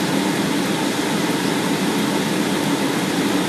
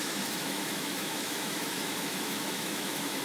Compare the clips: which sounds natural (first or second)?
first